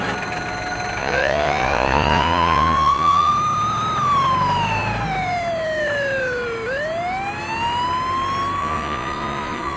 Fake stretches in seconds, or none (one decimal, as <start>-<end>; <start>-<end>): 1.0-3.3; 8.6-9.8